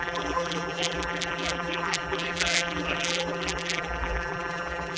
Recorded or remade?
remade